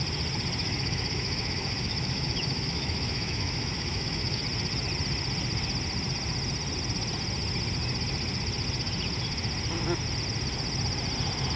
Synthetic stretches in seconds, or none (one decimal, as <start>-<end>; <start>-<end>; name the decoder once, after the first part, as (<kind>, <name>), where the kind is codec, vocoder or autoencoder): 0.6-4.4 (autoencoder, DAC-VAE)